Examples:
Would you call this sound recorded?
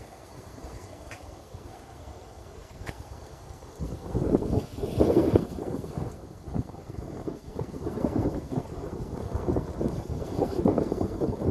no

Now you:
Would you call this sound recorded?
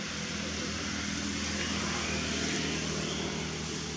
yes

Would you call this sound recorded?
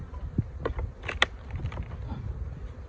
yes